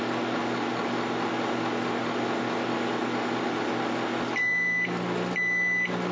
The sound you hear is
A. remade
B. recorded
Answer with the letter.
B